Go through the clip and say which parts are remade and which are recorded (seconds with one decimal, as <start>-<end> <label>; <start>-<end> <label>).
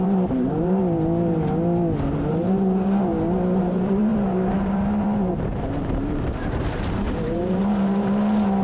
0.0-0.8 remade; 0.8-2.3 recorded; 2.3-3.1 remade; 3.1-3.6 recorded; 3.6-8.6 remade